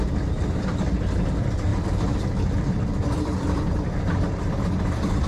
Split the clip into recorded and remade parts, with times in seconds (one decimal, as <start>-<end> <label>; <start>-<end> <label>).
0.0-1.7 recorded; 1.7-5.3 remade